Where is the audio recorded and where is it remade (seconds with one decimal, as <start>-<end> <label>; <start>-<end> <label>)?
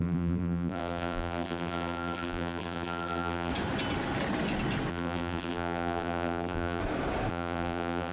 0.0-3.5 remade; 3.5-4.9 recorded; 4.9-6.8 remade; 6.8-7.3 recorded; 7.3-8.1 remade